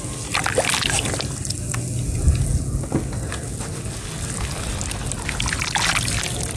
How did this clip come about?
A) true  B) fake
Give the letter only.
A